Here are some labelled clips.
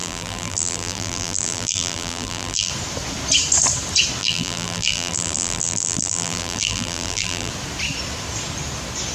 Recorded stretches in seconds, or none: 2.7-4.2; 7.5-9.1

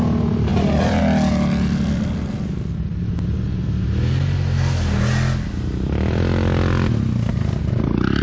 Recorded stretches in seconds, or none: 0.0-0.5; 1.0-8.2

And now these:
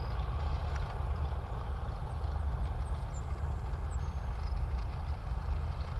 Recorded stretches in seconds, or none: 0.0-5.2